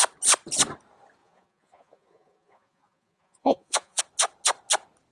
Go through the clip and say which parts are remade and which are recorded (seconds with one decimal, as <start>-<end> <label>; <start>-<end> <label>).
0.0-1.2 recorded; 1.2-4.0 remade; 4.0-5.1 recorded